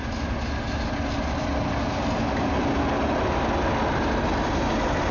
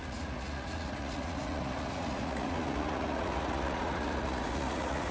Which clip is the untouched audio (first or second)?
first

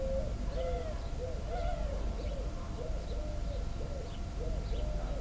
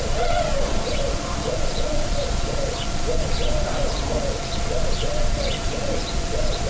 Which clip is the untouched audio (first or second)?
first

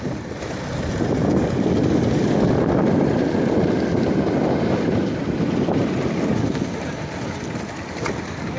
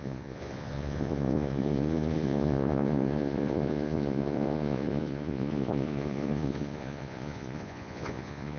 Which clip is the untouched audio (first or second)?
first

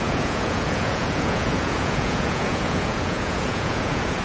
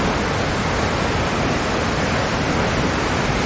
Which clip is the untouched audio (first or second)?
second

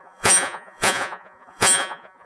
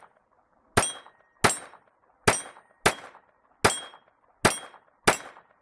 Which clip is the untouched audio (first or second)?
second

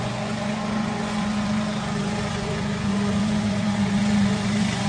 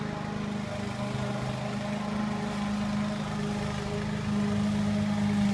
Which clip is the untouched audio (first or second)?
second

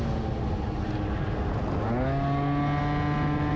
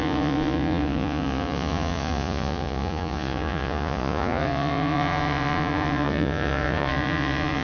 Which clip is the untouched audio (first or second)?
first